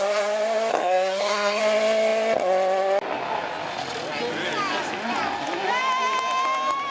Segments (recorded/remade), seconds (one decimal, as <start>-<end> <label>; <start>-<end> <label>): 0.0-0.7 recorded; 0.7-1.6 remade; 1.6-6.9 recorded